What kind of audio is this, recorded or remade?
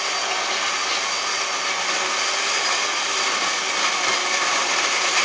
recorded